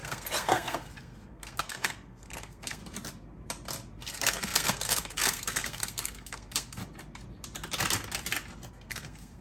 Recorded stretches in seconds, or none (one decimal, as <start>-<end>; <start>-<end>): 2.8-4.0; 6.8-8.7